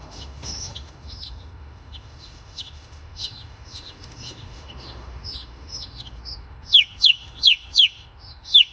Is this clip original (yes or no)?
no